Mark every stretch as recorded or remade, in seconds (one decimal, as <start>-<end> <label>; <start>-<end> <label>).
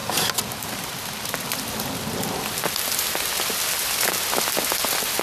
0.0-5.2 recorded